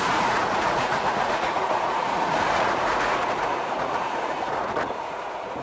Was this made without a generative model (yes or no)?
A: no